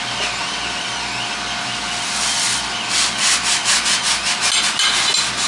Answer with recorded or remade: recorded